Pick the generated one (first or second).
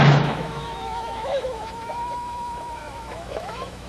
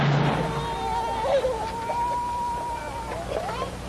first